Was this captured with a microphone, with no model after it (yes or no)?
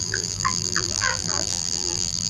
no